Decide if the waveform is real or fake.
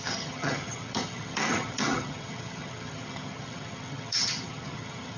fake